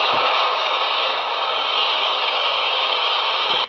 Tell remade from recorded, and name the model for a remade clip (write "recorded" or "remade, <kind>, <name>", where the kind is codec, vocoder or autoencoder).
remade, codec, DAC